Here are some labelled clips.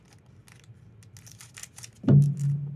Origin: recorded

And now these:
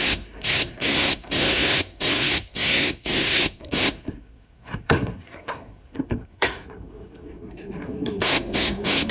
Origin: remade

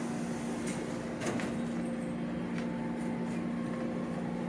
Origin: recorded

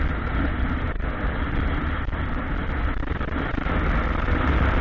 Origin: recorded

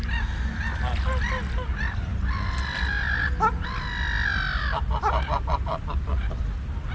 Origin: recorded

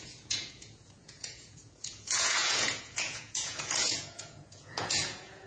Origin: remade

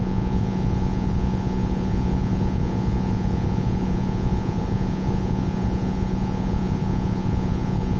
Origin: remade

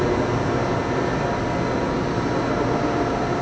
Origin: recorded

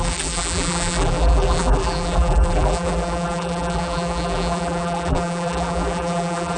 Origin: remade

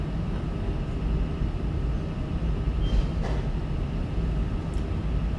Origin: recorded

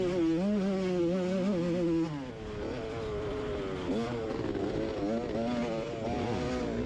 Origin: recorded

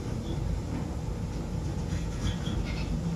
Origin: recorded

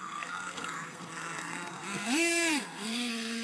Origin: remade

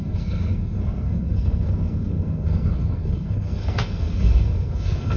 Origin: remade